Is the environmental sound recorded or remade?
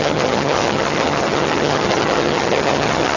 remade